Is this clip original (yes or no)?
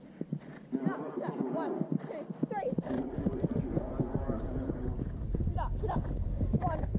yes